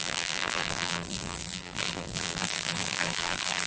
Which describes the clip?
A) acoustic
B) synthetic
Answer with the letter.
B